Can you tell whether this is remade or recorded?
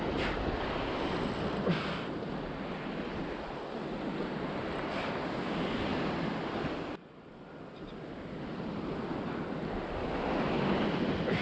recorded